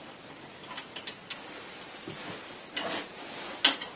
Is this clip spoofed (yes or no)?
no